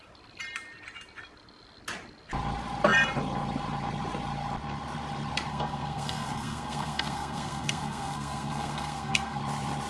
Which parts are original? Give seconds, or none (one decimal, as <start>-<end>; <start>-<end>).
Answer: 0.0-5.5; 9.4-9.9